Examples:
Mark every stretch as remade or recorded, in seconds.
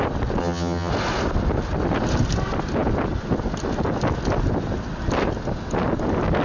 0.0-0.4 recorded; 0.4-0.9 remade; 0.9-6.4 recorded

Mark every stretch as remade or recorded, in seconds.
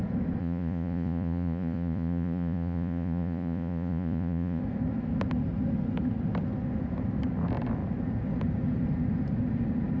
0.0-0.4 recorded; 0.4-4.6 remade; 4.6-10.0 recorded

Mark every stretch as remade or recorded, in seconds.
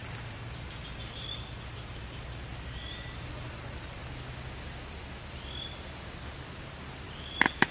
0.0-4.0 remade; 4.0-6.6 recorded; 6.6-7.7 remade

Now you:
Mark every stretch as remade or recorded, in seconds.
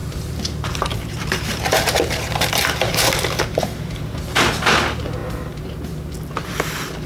0.0-3.6 remade; 3.6-7.1 recorded